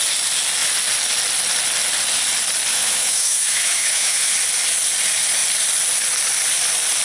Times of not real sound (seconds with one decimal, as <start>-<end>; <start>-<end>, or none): 2.7-4.3